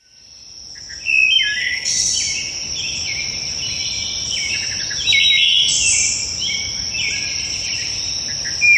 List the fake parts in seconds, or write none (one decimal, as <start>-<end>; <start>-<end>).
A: 1.6-2.1